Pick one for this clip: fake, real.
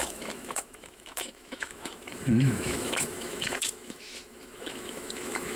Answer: fake